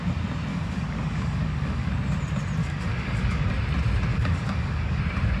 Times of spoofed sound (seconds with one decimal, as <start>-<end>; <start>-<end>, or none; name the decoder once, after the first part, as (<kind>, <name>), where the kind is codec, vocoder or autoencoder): 0.5-1.9 (codec, DAC); 2.6-3.5; 4.1-5.0